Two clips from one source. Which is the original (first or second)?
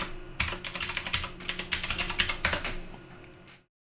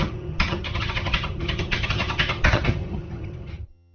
first